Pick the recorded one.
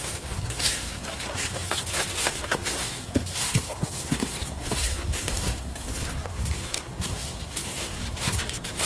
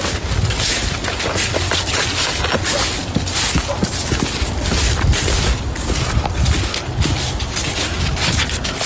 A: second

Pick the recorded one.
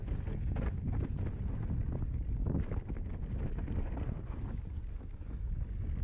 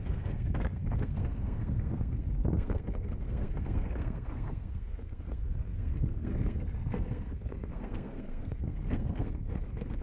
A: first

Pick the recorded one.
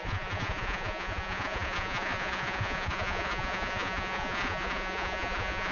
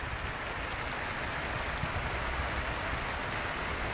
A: second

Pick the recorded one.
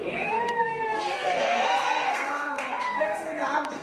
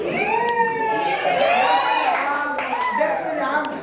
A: second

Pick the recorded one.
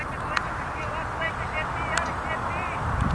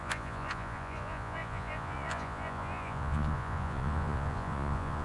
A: first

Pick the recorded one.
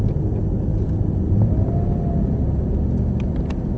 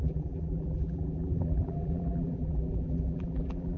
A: first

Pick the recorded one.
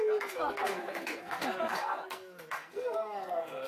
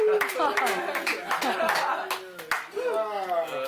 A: second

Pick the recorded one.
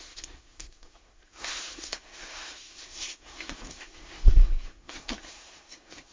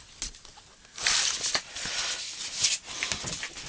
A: second